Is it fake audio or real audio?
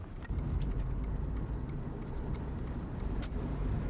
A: fake